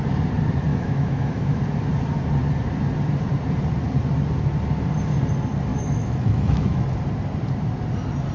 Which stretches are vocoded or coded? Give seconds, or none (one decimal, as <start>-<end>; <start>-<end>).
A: 0.7-1.6; 5.7-6.8